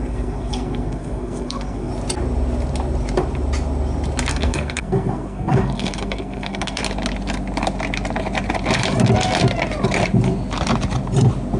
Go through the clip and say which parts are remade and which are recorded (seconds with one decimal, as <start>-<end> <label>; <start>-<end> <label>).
0.0-1.9 remade; 1.9-4.3 recorded; 4.3-6.8 remade; 6.8-11.6 recorded